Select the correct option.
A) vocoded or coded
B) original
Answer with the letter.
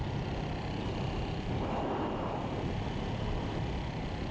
B